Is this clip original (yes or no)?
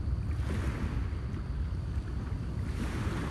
yes